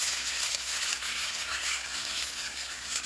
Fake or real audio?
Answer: fake